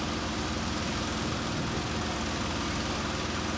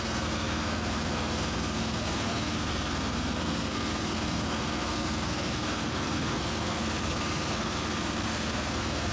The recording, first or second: first